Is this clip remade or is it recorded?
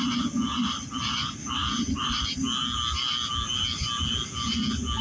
recorded